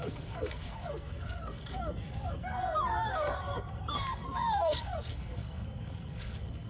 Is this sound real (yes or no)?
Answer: no